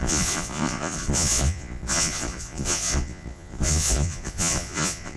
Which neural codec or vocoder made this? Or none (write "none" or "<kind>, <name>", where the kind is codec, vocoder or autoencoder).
vocoder, Vocos